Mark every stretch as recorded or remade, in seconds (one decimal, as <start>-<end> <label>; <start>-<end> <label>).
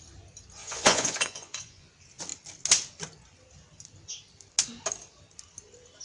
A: 0.0-0.6 recorded; 0.6-1.9 remade; 1.9-6.0 recorded